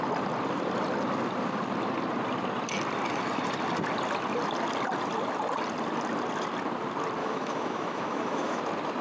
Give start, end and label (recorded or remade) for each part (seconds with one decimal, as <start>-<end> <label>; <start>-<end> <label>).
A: 0.0-7.2 recorded; 7.2-8.6 remade; 8.6-9.0 recorded